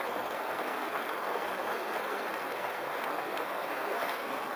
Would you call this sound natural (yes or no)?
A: no